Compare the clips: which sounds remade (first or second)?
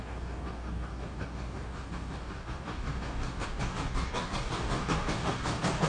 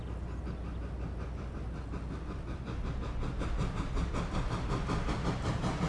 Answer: first